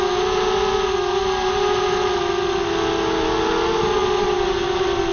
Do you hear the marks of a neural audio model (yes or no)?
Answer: no